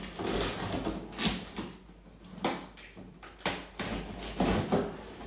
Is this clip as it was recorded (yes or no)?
yes